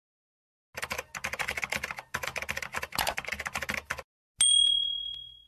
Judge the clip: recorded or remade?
recorded